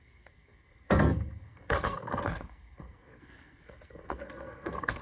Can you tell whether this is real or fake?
fake